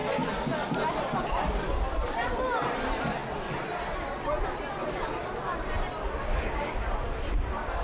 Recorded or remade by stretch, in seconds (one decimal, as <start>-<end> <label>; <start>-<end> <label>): 0.0-6.2 recorded; 6.2-6.7 remade; 6.7-7.8 recorded